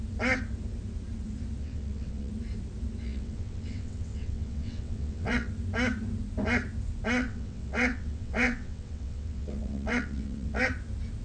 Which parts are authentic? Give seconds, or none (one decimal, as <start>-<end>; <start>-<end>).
0.0-1.6; 2.3-3.0; 5.5-7.2; 10.6-11.2